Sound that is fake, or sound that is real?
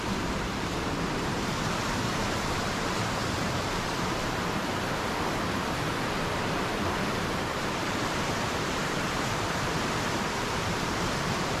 fake